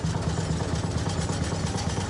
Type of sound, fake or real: real